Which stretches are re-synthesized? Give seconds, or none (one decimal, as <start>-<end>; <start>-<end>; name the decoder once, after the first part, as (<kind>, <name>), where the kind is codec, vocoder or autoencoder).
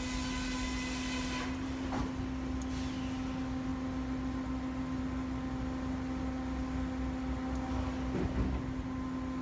none